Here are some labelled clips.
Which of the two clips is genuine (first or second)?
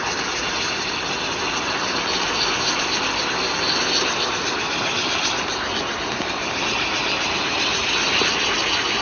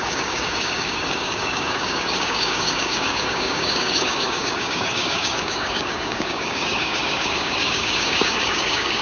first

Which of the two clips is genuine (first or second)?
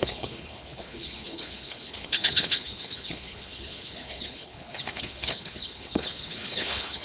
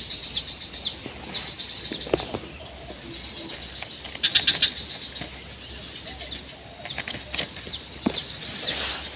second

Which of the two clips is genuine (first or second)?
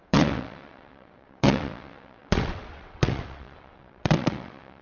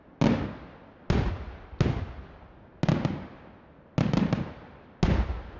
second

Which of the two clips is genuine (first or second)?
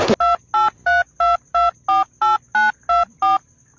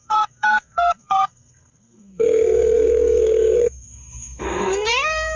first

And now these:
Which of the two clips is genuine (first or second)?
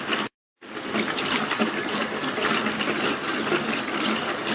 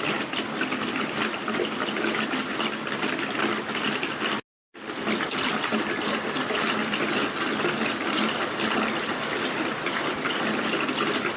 second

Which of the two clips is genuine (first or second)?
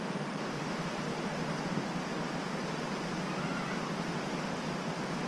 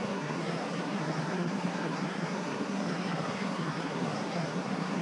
first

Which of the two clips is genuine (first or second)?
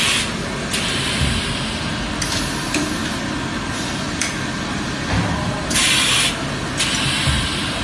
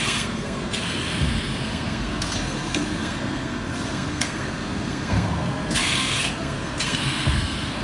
first